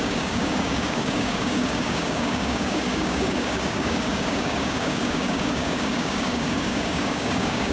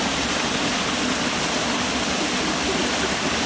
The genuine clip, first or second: second